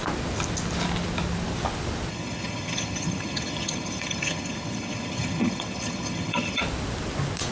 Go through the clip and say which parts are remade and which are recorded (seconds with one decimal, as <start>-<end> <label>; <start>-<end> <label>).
0.0-2.1 recorded; 2.1-6.6 remade; 6.6-7.5 recorded